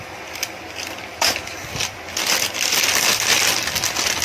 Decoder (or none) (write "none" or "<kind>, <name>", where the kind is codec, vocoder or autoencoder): none